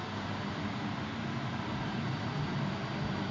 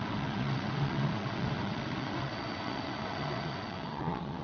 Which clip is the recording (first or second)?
first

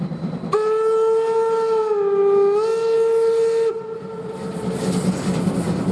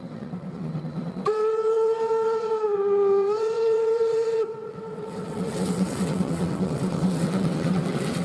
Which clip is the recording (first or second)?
first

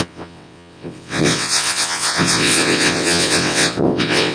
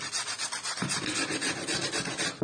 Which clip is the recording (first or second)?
second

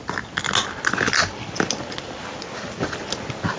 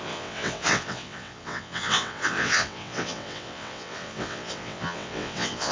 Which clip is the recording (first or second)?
first